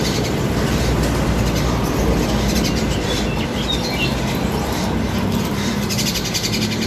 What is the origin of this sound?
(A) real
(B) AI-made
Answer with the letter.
A